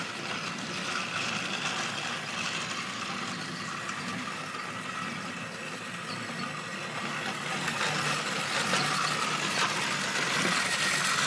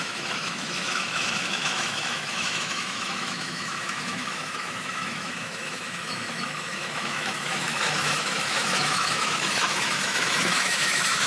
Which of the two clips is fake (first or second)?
second